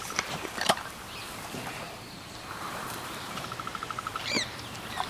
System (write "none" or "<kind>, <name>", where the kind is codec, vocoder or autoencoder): vocoder, BigVGAN v2